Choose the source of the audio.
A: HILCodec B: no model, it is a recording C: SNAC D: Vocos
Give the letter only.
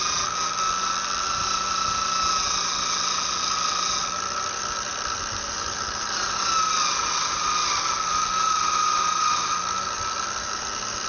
B